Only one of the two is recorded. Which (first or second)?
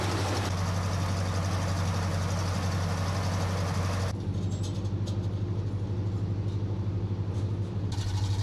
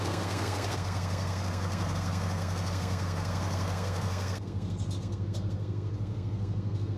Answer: first